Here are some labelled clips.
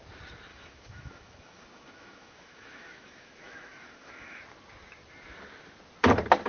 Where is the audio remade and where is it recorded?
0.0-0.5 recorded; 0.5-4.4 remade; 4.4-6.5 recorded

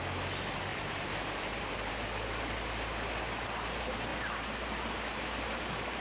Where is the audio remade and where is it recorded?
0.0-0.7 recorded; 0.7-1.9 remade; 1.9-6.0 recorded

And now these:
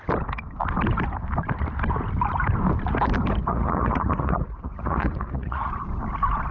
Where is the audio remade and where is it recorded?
0.0-3.5 recorded; 3.5-5.7 remade; 5.7-6.5 recorded

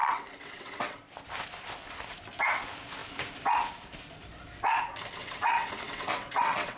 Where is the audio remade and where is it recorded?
0.0-1.1 remade; 1.1-5.2 recorded; 5.2-6.8 remade

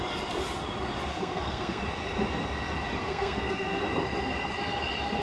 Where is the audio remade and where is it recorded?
0.0-1.1 recorded; 1.1-1.8 remade; 1.8-3.0 recorded; 3.0-3.8 remade; 3.8-5.2 recorded